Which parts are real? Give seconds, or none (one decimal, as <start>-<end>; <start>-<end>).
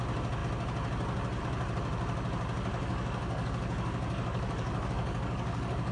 0.0-2.7